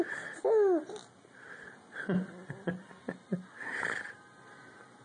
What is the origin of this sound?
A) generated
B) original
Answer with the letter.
B